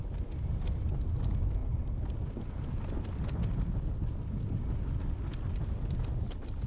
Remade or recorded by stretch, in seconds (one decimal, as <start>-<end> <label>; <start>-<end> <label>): 0.0-6.7 recorded